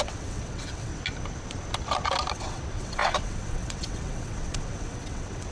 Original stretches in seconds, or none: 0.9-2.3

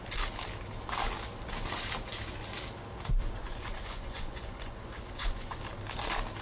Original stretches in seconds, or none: 0.0-3.4; 5.6-6.4

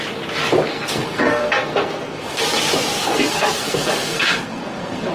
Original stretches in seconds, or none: 0.0-0.7; 2.4-3.0